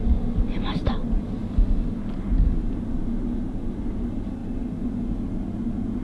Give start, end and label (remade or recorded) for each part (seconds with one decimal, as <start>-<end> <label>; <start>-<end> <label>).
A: 0.0-6.0 recorded